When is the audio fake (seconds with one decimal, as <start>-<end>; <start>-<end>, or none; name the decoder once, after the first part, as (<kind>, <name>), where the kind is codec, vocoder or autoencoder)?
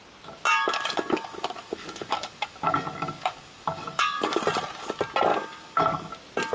0.5-4.4 (codec, DAC); 5.3-6.1